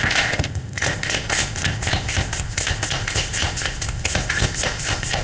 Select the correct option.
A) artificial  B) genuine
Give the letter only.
A